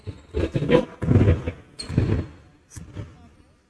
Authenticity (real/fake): real